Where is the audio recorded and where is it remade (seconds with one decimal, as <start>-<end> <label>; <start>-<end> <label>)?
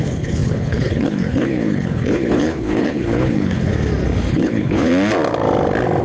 0.0-3.7 remade; 3.7-4.3 recorded; 4.3-4.9 remade; 4.9-6.0 recorded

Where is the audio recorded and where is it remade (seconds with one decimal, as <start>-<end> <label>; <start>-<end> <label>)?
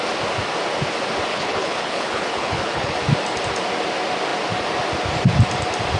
0.0-1.3 recorded; 1.3-3.0 remade; 3.0-6.0 recorded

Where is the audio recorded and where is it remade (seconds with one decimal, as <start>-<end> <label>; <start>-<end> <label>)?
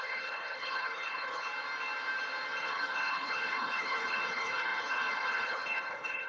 0.0-1.5 remade; 1.5-2.6 recorded; 2.6-6.3 remade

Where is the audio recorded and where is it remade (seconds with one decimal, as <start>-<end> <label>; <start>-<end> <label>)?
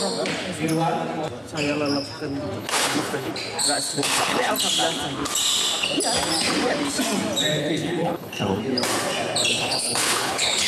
0.0-2.6 recorded; 2.6-3.3 remade; 3.3-3.9 recorded; 3.9-4.5 remade; 4.5-7.6 recorded; 7.6-8.6 remade; 8.6-9.5 recorded; 9.5-10.7 remade